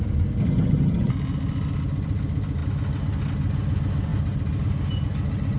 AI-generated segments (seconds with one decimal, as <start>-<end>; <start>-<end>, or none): 0.4-1.1